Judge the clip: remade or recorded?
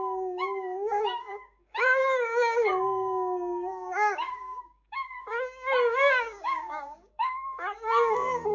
remade